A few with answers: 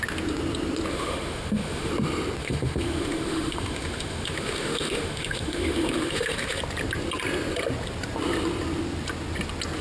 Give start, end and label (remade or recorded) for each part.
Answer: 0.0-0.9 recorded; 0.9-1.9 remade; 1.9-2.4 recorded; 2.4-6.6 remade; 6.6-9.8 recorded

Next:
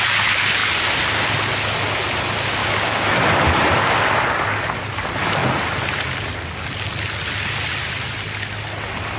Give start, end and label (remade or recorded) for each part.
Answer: 0.0-2.6 recorded; 2.6-3.1 remade; 3.1-9.2 recorded

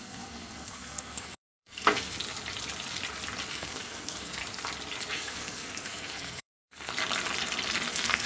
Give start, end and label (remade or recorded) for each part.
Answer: 0.0-2.2 remade; 2.2-3.5 recorded; 3.5-4.4 remade; 4.4-5.1 recorded; 5.1-6.9 remade; 6.9-7.9 recorded; 7.9-8.3 remade

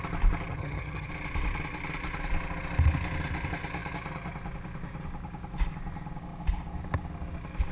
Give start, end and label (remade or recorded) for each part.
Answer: 0.0-0.5 recorded; 0.5-1.1 remade; 1.1-7.7 recorded